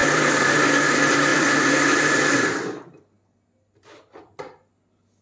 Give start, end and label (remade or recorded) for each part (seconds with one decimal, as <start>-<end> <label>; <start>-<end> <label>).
0.0-0.6 remade; 0.6-1.3 recorded; 1.3-2.2 remade; 2.2-5.2 recorded

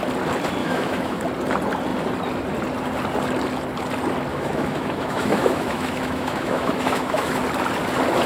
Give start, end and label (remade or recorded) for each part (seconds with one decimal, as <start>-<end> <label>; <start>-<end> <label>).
0.0-0.6 recorded; 0.6-1.2 remade; 1.2-4.3 recorded; 4.3-7.4 remade; 7.4-8.3 recorded

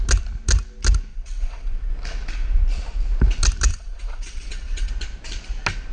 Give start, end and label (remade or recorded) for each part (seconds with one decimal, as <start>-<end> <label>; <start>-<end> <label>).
0.0-1.1 recorded; 1.1-1.9 remade; 1.9-3.7 recorded; 3.7-4.9 remade; 4.9-5.9 recorded

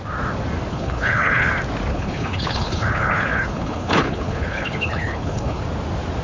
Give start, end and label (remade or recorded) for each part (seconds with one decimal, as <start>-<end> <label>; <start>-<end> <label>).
0.0-0.7 recorded; 0.7-1.5 remade; 1.5-1.9 recorded; 1.9-5.6 remade; 5.6-6.2 recorded